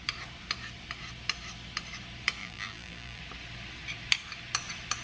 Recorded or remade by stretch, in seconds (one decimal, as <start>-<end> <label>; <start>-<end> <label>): 0.0-2.4 recorded; 2.4-3.2 remade; 3.2-5.0 recorded